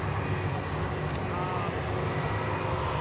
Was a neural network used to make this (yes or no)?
no